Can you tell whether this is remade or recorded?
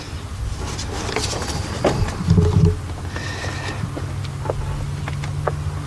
recorded